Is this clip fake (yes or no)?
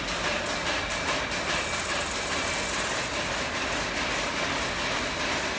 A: no